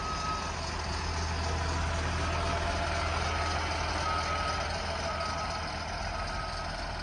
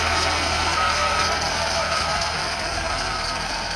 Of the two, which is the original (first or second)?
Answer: first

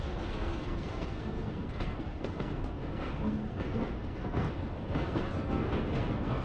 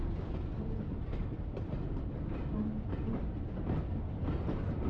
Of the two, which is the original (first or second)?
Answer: second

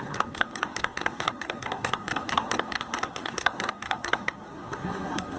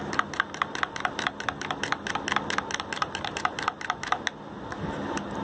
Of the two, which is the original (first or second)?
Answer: second